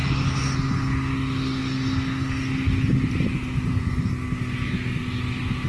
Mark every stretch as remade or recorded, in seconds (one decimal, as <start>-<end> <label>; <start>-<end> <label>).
0.0-5.7 recorded